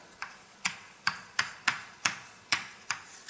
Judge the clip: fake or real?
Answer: fake